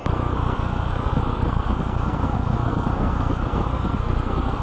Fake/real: fake